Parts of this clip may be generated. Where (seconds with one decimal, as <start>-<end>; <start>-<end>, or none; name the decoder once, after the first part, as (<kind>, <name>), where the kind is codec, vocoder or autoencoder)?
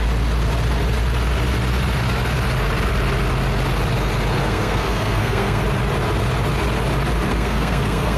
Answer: 4.4-5.6 (codec, SNAC); 7.3-8.2